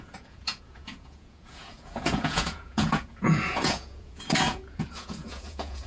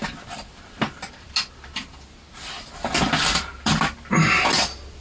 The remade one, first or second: first